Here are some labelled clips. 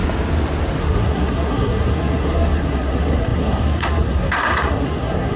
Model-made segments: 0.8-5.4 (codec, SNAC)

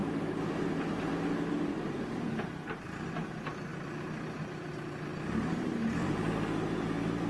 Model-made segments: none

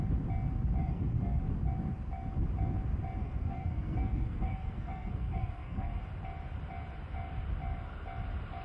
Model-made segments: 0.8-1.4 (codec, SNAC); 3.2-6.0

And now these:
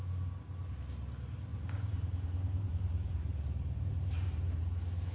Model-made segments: 1.5-4.6 (vocoder, BigVGAN v2)

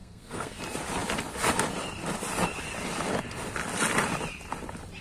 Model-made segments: 0.0-0.6 (codec, SNAC)

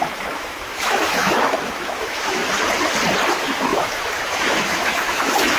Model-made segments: 0.0-2.4 (autoencoder, DAC-VAE); 3.3-5.6